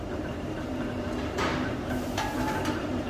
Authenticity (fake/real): fake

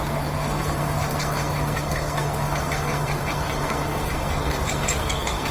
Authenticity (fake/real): fake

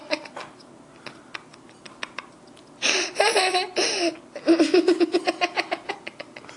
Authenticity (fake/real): real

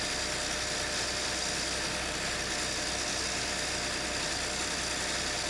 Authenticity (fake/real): real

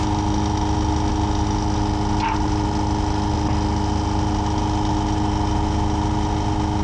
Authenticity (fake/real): real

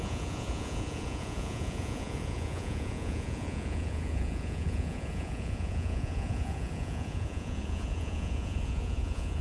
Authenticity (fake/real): fake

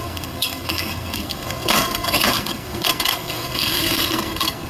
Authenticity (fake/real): fake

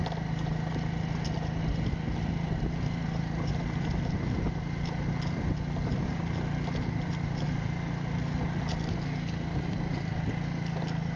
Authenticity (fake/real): real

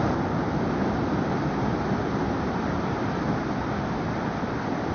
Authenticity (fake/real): real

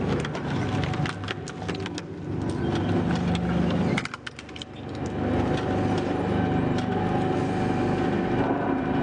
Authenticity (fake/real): real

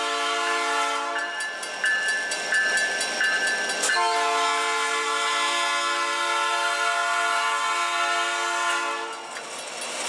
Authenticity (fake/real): real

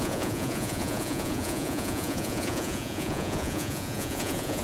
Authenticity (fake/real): fake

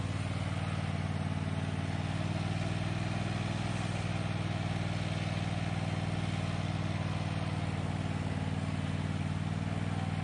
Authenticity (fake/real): real